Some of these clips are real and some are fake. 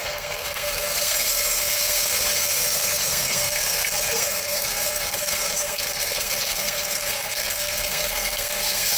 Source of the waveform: fake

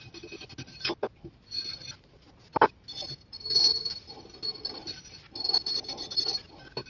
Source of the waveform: real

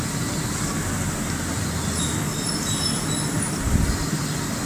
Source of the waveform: real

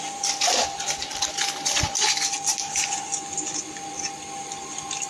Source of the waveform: real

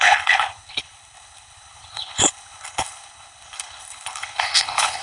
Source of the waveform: fake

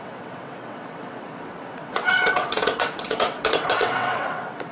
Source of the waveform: fake